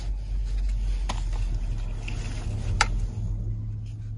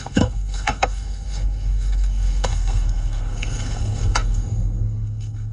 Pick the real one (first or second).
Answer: first